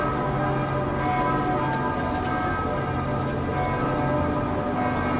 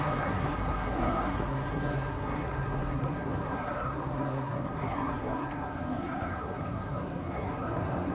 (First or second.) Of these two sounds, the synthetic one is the second